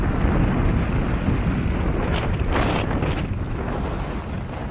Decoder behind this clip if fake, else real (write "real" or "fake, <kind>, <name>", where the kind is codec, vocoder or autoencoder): real